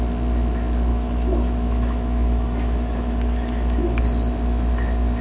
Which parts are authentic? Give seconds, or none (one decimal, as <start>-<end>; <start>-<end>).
0.0-0.9; 4.0-5.2